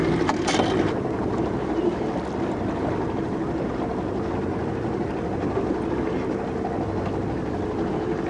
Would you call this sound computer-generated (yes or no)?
no